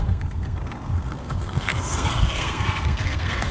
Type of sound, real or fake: fake